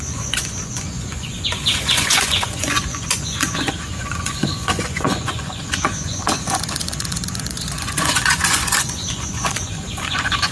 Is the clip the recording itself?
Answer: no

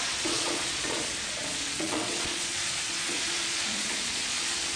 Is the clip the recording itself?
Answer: no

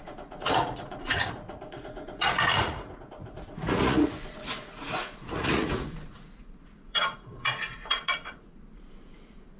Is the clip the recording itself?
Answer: no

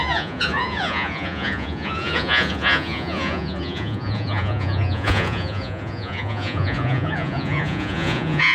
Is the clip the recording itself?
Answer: no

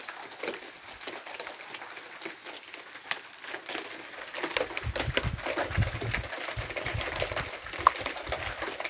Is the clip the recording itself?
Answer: yes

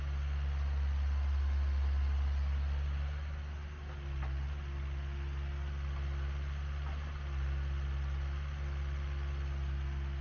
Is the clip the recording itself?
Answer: yes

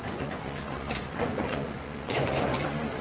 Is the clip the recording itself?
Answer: no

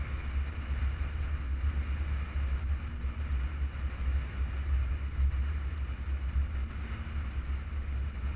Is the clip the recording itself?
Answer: yes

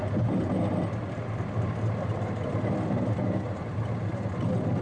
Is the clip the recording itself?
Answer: yes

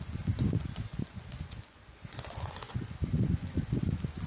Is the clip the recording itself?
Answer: no